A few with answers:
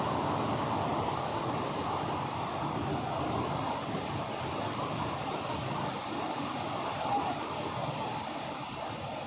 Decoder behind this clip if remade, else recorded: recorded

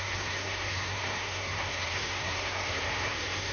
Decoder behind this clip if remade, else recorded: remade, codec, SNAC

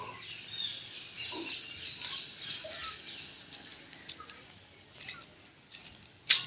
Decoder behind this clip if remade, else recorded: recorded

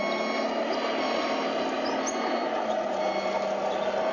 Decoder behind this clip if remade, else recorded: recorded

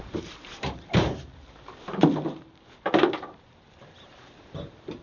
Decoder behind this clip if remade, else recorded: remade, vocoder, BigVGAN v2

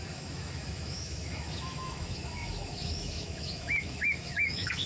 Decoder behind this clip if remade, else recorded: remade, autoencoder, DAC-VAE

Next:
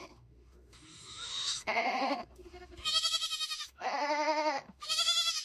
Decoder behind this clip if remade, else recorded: remade, autoencoder, DAC-VAE